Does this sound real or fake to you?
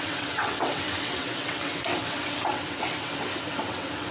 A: fake